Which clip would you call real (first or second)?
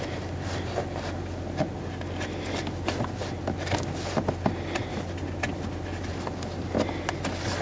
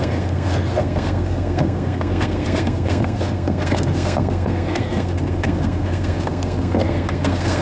first